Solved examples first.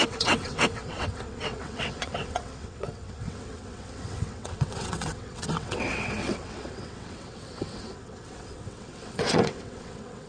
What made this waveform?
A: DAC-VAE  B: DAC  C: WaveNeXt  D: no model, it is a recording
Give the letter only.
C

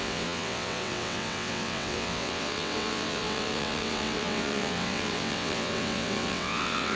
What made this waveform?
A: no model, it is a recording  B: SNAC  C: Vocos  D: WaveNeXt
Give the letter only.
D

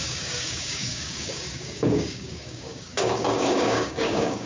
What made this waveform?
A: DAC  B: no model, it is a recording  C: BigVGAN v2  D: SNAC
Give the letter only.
A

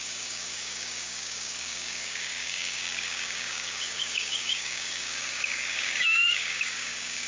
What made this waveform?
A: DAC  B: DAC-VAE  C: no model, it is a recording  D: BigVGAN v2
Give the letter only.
A